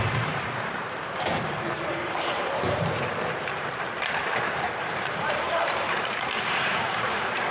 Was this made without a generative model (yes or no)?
no